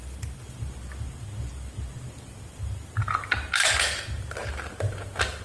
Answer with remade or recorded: recorded